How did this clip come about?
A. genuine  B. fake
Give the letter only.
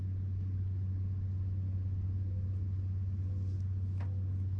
A